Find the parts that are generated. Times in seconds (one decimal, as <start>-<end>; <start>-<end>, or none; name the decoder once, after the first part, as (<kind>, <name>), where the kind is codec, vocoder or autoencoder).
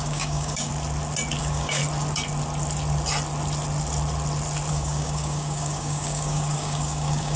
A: 0.0-0.7 (codec, DAC); 1.4-1.8; 4.7-7.4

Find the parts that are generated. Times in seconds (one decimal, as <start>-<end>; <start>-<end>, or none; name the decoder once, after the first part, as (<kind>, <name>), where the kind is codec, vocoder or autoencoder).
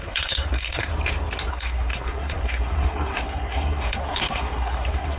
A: 0.0-0.9 (codec, SNAC); 1.5-5.2